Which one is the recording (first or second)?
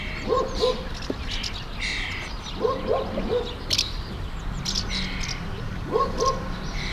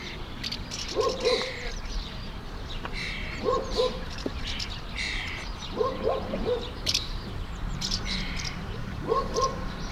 first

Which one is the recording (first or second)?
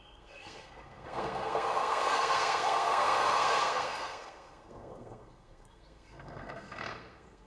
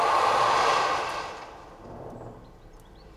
second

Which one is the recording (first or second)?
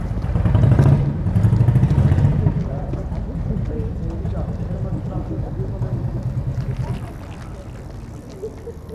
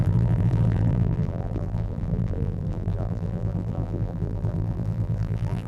first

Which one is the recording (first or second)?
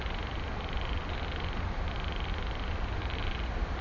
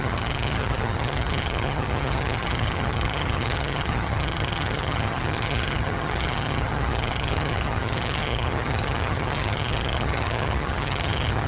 first